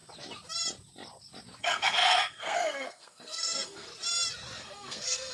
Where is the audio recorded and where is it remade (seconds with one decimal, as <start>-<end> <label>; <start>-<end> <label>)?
0.0-1.6 recorded; 1.6-3.9 remade; 3.9-4.6 recorded; 4.6-5.3 remade